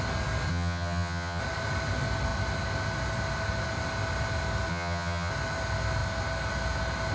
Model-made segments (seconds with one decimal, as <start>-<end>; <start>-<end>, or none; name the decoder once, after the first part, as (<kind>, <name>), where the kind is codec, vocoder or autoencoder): 0.5-1.4 (vocoder, HiFi-GAN); 4.7-5.3